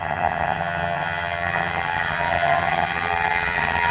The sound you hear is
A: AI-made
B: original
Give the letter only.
A